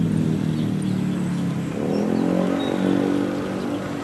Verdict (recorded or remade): recorded